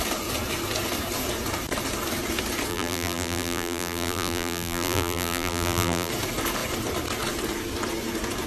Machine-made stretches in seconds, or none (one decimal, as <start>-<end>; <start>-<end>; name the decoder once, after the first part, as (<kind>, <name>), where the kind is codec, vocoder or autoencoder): 2.7-6.1 (vocoder, BigVGAN v2)